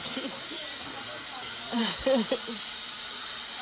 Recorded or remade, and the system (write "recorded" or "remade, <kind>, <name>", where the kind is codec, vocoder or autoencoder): remade, vocoder, BigVGAN v2